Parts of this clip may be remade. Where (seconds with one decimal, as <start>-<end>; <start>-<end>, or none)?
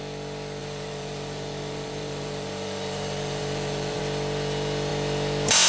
0.6-4.0